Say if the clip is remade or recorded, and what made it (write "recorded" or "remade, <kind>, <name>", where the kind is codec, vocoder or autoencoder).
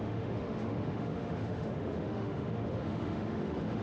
remade, autoencoder, DAC-VAE